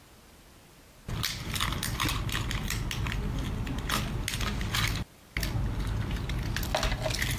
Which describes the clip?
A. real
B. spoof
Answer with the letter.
A